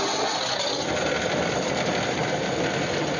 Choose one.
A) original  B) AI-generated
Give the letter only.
A